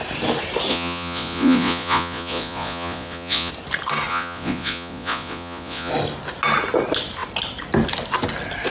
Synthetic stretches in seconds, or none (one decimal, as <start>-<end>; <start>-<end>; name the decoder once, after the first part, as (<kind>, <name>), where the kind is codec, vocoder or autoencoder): 0.7-3.5 (vocoder, Vocos); 4.1-5.9